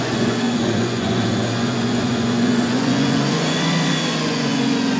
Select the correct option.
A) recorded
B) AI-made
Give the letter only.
B